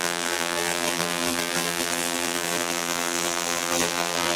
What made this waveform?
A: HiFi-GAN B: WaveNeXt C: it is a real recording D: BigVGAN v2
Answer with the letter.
D